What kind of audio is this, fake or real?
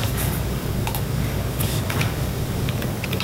fake